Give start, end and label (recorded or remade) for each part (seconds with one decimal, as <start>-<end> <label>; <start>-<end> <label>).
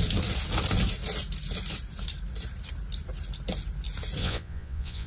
0.0-4.2 recorded; 4.2-5.1 remade